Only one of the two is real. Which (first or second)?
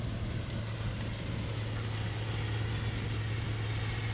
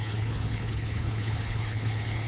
first